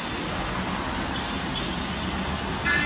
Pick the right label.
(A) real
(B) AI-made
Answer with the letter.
A